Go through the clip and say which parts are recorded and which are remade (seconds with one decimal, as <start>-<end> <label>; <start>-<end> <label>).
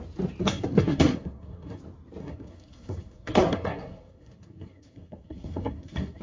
0.0-0.4 recorded; 0.4-1.8 remade; 1.8-2.2 recorded; 2.2-6.2 remade